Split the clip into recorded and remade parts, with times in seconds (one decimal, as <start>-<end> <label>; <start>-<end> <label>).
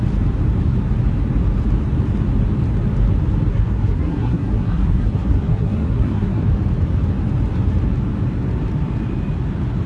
0.0-3.5 recorded; 3.5-6.5 remade; 6.5-9.9 recorded